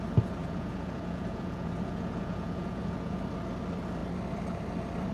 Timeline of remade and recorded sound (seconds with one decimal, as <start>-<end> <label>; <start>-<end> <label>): 0.0-0.4 recorded; 0.4-3.2 remade; 3.2-5.1 recorded